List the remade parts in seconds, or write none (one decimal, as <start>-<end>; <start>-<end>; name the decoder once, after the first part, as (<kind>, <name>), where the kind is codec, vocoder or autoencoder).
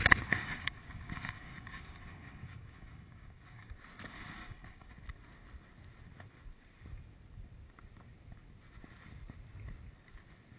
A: 0.4-3.7 (codec, DAC); 4.4-4.9